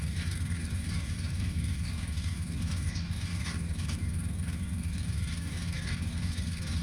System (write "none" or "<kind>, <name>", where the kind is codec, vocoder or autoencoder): codec, DAC